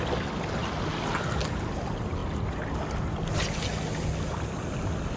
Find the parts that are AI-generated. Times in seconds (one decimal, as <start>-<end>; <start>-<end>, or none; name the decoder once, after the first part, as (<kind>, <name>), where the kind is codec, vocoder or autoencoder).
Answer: none